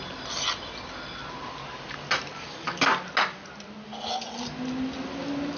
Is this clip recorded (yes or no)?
yes